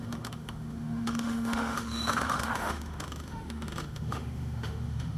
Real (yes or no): no